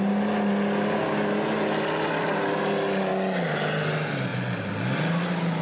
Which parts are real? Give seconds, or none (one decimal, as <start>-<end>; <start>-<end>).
0.0-5.6